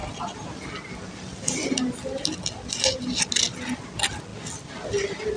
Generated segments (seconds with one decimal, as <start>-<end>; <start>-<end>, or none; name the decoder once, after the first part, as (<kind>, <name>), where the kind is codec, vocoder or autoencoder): none